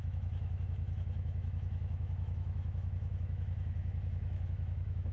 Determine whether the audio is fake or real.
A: fake